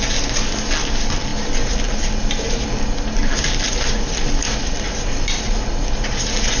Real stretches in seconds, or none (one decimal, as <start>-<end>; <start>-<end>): 0.0-6.6